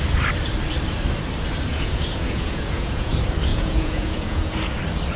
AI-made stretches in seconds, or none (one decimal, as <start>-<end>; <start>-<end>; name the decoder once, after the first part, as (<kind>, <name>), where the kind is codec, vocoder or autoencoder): 1.7-3.1 (vocoder, Vocos); 3.5-4.7